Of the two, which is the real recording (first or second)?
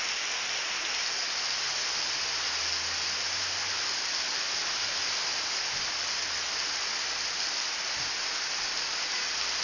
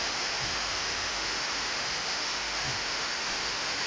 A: first